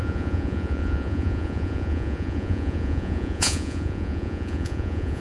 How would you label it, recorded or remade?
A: remade